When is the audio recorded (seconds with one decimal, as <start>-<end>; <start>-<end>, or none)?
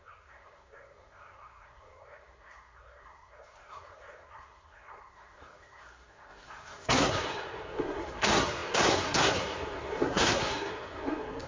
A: none